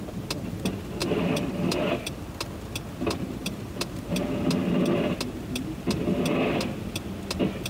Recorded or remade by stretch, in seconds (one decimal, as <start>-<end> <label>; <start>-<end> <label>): 0.0-1.0 recorded; 1.0-2.2 remade; 2.2-3.4 recorded; 3.4-4.2 remade; 4.2-7.7 recorded